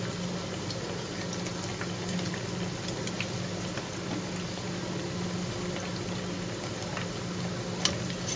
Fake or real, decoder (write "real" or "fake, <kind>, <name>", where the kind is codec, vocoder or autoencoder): real